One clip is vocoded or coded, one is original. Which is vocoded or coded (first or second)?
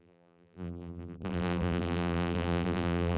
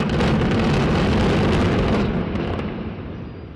first